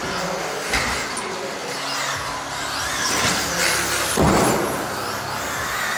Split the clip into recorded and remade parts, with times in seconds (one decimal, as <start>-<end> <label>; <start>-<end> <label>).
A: 0.0-6.0 recorded